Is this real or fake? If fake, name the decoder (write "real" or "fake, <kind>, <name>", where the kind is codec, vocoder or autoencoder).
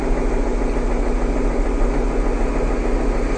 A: real